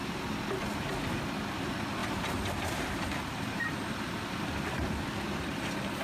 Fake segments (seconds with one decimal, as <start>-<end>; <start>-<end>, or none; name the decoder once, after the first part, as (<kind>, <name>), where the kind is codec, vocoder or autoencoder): 0.0-0.6 (vocoder, BigVGAN v2); 2.0-5.6